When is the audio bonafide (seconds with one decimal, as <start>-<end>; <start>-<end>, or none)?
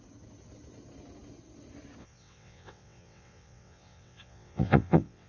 0.0-2.0